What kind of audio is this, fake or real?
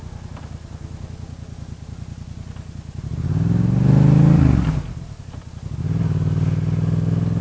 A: real